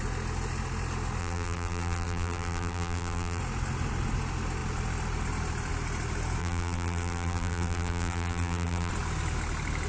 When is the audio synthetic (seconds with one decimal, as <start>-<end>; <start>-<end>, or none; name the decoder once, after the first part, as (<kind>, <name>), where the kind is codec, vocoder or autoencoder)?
1.2-3.4 (vocoder, BigVGAN v2); 6.4-8.9